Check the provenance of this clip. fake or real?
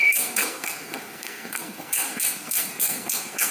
fake